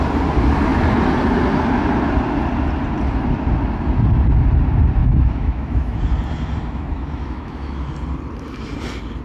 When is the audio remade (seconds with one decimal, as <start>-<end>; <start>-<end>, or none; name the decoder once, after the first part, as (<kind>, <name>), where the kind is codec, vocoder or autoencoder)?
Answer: 5.0-6.0 (autoencoder, DAC-VAE); 6.6-7.9